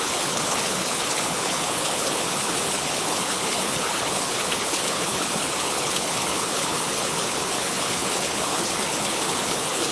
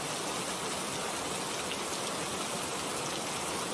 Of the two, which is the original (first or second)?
second